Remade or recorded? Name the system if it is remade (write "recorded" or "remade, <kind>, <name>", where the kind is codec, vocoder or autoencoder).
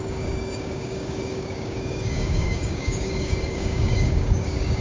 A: remade, codec, DAC